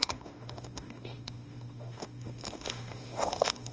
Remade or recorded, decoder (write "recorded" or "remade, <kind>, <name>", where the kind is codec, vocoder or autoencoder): remade, autoencoder, DAC-VAE